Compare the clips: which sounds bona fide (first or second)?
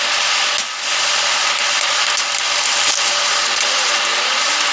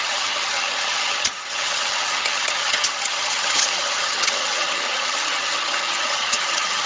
first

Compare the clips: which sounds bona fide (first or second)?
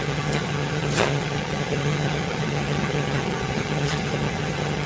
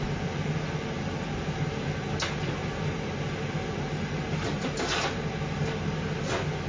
second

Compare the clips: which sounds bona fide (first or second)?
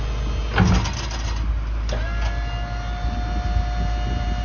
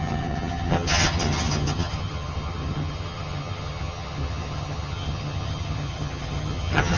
first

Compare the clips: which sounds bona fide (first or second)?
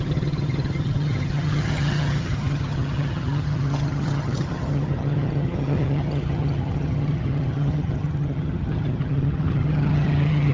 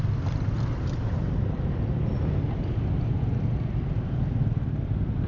second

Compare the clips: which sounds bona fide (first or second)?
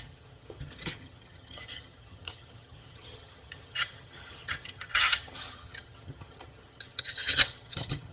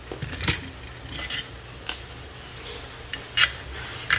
second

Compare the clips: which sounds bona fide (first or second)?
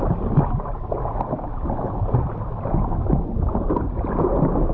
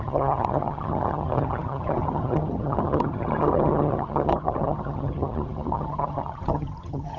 first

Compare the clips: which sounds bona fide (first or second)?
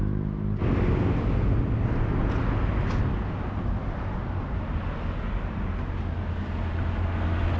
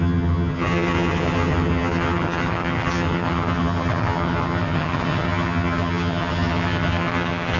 first